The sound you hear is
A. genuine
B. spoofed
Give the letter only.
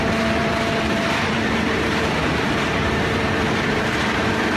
B